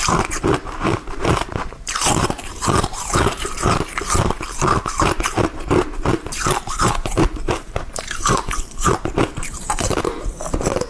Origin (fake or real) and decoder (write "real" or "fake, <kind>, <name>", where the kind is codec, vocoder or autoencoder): fake, vocoder, BigVGAN v2